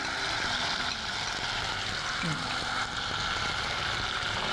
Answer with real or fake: real